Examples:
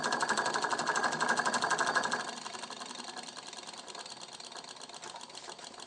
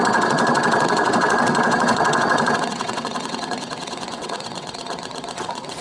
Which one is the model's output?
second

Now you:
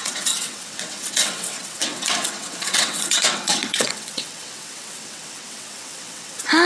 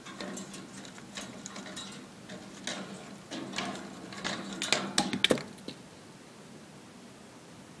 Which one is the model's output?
first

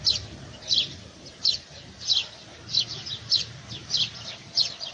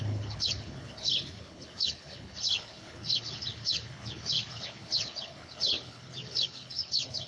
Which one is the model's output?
second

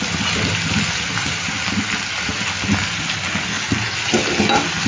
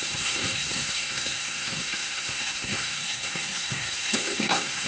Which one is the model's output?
second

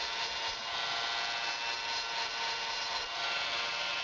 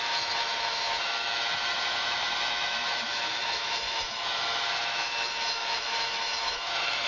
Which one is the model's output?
second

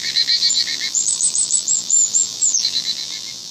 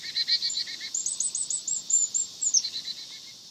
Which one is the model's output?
first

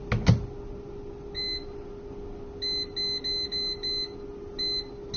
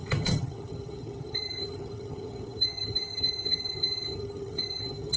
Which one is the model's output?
second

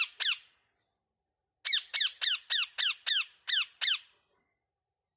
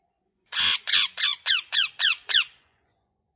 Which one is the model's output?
second